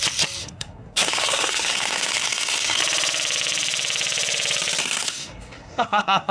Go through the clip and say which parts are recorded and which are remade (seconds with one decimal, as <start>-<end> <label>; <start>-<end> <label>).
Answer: 0.0-0.4 recorded; 0.4-2.8 remade; 2.8-4.8 recorded; 4.8-6.3 remade